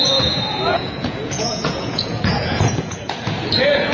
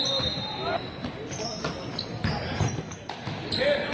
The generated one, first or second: first